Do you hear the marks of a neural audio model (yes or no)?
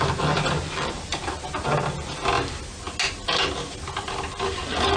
no